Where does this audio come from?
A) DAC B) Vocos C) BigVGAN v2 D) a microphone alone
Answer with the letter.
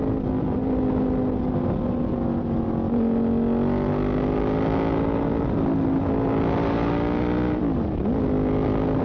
D